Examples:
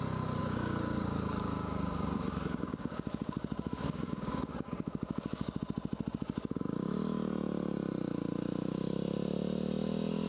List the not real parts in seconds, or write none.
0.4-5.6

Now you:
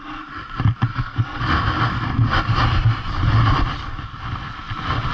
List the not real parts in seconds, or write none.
0.9-1.4

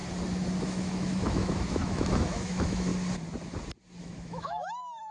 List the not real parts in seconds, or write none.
0.6-2.9; 4.0-5.1

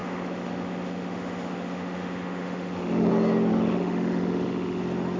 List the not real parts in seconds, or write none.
0.0-3.1; 3.5-4.8